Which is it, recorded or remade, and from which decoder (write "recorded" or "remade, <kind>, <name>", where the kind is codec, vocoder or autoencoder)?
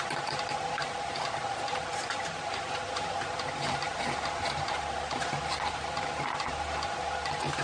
recorded